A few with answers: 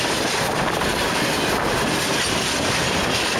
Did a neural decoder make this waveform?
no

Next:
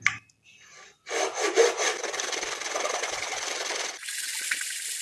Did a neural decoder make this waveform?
no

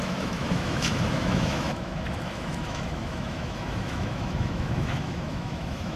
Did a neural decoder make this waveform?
yes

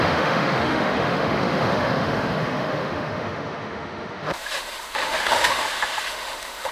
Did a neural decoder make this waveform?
yes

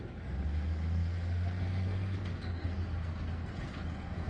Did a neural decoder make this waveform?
yes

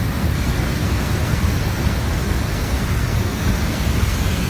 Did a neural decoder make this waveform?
yes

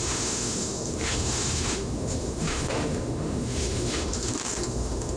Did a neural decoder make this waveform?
yes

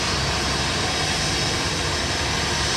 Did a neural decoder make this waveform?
no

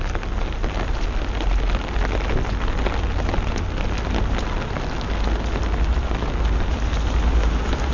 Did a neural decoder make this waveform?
no